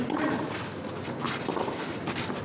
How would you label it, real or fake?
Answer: real